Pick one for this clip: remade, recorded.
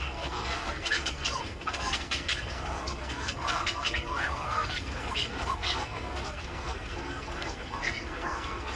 remade